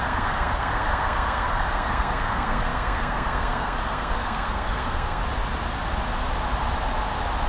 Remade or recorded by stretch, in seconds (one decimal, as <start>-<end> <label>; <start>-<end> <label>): 0.0-5.2 remade; 5.2-7.5 recorded